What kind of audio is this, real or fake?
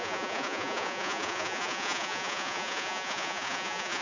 fake